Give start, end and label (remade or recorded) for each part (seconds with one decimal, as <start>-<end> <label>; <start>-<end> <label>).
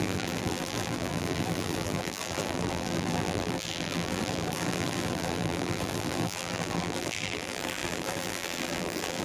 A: 0.0-9.2 remade